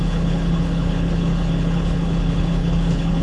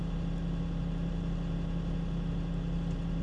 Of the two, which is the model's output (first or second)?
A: first